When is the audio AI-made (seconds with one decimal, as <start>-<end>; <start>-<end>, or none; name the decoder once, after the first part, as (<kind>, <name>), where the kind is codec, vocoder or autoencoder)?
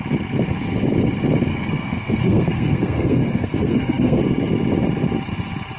1.5-4.2 (codec, SNAC)